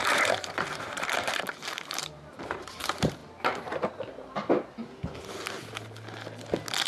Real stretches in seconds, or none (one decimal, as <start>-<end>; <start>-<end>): 3.2-6.9